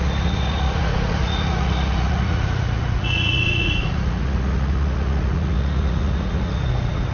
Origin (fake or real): fake